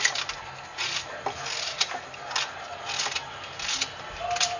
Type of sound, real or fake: real